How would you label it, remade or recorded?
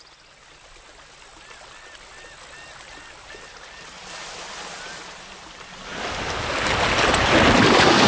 recorded